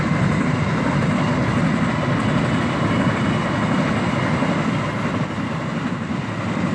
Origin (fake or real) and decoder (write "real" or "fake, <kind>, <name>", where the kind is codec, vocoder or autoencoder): real